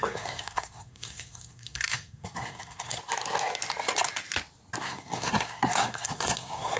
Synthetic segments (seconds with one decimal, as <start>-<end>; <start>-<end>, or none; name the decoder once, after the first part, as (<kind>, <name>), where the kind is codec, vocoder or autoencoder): 0.0-3.0 (codec, SNAC); 4.8-6.8